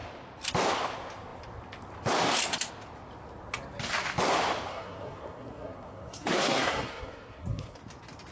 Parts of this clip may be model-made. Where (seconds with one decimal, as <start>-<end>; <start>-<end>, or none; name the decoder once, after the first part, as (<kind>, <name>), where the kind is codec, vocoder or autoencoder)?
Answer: 4.7-7.8 (codec, SNAC)